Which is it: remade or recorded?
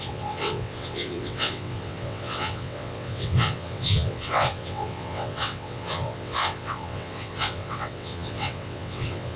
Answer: remade